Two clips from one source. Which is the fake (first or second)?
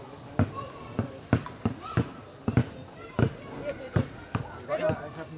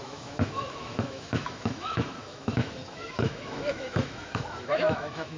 second